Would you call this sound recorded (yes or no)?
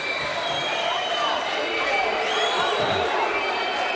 no